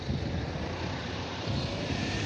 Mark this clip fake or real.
fake